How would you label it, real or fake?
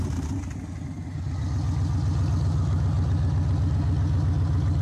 real